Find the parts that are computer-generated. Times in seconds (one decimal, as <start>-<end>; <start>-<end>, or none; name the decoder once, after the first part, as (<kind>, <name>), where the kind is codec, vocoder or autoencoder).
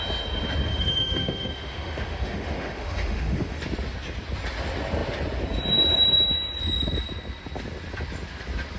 0.7-3.6 (autoencoder, DAC-VAE)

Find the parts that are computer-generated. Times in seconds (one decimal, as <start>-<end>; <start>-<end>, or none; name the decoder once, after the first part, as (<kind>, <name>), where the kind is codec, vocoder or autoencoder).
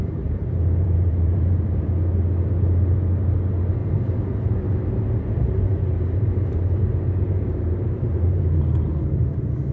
0.0-1.9 (vocoder, BigVGAN v2); 3.8-8.6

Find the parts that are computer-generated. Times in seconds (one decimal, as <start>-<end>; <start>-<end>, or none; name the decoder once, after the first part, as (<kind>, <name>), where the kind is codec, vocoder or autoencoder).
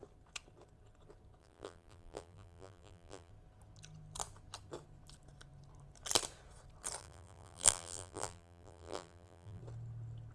1.4-3.3 (vocoder, BigVGAN v2); 7.0-9.6